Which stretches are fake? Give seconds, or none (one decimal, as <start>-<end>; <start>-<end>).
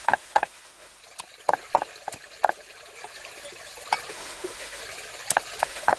0.0-1.0; 4.1-4.8; 5.6-6.0